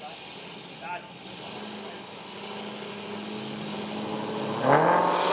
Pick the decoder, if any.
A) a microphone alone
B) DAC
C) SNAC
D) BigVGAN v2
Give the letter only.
A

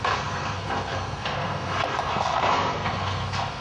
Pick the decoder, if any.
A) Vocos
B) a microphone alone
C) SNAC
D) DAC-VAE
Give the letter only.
C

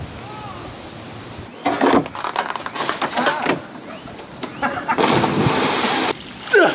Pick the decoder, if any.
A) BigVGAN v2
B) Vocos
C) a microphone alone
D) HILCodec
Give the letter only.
C